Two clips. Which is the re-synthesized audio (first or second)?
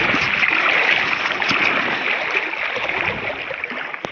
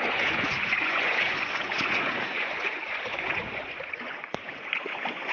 second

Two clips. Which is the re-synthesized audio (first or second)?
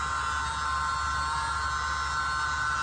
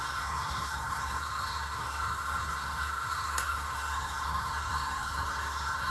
second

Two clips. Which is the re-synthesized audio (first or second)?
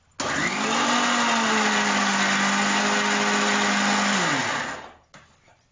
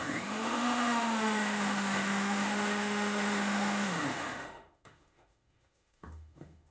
second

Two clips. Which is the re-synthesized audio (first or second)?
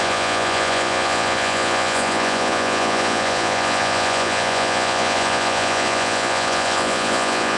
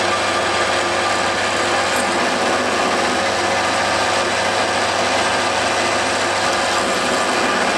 first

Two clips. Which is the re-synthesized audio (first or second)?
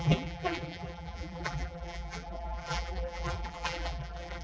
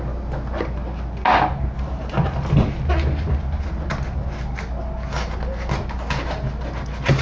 first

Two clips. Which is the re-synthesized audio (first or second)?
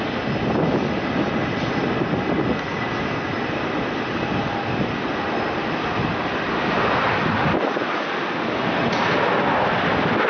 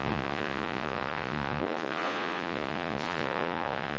second